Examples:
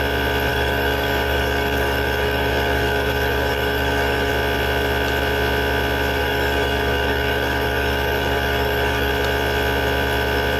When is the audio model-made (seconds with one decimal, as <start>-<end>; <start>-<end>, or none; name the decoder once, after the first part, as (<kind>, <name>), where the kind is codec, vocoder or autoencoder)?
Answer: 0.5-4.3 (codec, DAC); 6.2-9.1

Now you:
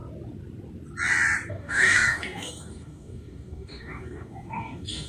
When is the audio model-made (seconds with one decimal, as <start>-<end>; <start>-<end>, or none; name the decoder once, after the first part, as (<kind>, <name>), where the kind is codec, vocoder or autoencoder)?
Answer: 1.5-5.1 (codec, DAC)

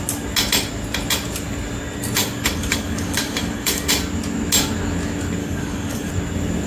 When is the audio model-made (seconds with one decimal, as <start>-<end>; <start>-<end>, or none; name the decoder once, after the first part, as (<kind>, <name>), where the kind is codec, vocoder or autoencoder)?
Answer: 2.2-3.9 (codec, DAC); 5.4-6.1

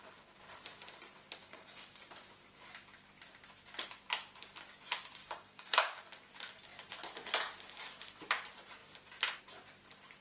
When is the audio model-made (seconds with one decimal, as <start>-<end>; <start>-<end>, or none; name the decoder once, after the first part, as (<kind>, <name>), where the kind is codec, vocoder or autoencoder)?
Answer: 1.4-2.0 (codec, DAC); 5.2-6.0

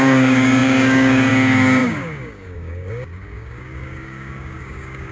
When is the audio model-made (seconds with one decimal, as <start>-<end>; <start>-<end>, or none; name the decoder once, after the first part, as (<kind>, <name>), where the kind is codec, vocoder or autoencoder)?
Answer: 0.0-5.1 (codec, DAC)

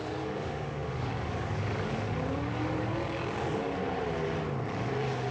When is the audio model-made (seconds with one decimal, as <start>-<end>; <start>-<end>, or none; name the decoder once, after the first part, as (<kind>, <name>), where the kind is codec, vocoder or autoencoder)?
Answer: 0.0-3.8 (codec, DAC); 4.8-5.3

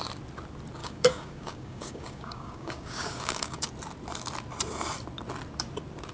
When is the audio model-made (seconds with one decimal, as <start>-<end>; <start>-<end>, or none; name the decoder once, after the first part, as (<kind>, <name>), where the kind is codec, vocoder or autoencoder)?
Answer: 0.8-3.7 (codec, DAC)

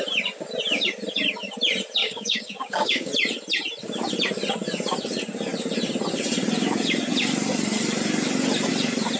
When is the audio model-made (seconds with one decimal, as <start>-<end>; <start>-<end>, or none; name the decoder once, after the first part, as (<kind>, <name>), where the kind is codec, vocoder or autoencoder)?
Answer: 2.0-3.1 (codec, DAC)